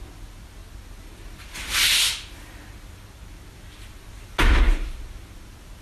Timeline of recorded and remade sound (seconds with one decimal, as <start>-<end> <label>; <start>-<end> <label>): 0.0-5.8 recorded